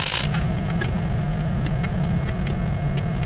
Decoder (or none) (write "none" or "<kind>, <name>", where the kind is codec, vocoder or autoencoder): none